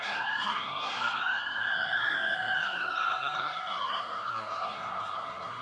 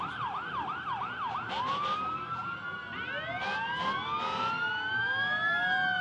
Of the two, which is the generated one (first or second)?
first